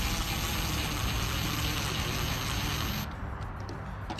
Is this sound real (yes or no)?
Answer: yes